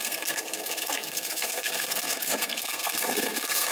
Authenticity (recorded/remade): remade